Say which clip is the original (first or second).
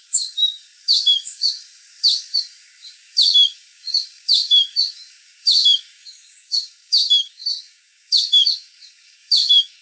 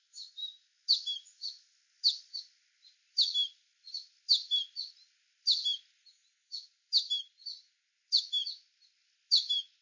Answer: second